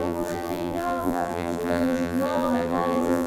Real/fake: fake